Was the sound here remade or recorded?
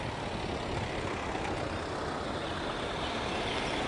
recorded